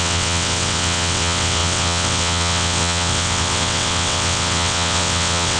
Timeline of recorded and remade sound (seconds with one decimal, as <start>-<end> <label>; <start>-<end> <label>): 0.0-5.6 remade